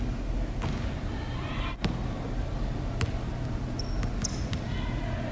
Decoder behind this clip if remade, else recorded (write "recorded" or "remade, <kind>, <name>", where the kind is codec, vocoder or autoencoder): recorded